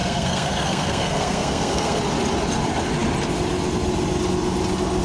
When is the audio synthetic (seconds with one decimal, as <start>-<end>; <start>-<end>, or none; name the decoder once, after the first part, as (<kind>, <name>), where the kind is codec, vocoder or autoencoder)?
0.0-2.0 (codec, SNAC)